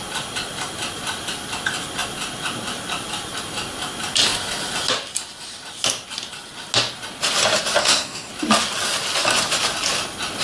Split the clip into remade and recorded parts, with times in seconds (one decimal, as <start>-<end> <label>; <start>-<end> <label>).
0.0-7.8 recorded; 7.8-8.3 remade; 8.3-10.4 recorded